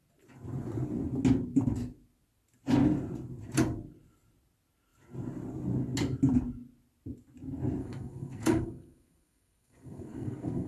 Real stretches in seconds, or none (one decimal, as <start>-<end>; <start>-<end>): 0.0-7.8